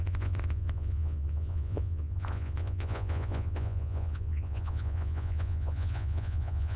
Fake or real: fake